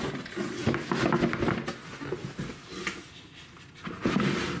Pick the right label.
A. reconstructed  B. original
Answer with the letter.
B